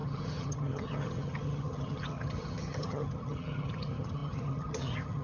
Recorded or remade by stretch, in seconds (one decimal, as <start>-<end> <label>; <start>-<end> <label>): 0.0-5.2 remade